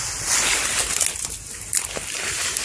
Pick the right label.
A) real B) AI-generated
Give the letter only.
A